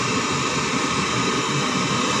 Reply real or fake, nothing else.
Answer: real